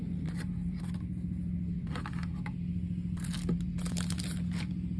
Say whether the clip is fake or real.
real